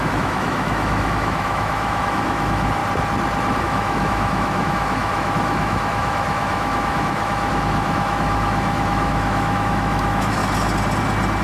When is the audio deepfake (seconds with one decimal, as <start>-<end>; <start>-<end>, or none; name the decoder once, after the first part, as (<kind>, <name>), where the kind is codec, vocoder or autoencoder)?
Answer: 0.0-2.8 (autoencoder, DAC-VAE); 3.6-10.4